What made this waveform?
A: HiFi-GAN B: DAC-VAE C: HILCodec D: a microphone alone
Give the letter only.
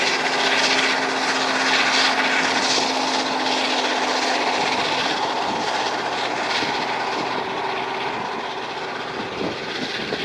D